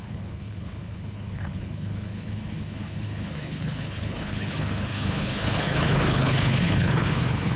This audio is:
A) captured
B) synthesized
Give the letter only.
B